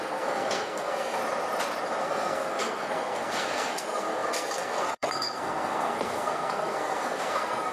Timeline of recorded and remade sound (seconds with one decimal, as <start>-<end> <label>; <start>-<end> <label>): 0.0-1.2 remade; 1.2-2.0 recorded; 2.0-7.7 remade